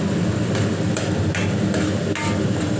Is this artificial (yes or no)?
no